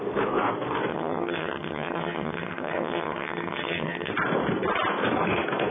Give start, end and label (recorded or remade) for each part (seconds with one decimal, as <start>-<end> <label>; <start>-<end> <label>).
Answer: 0.0-0.9 recorded; 0.9-4.1 remade; 4.1-5.7 recorded